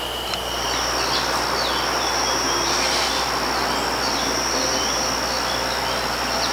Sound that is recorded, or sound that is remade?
recorded